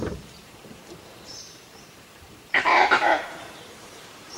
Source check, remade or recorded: remade